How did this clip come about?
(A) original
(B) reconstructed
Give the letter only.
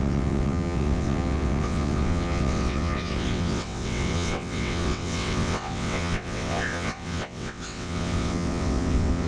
B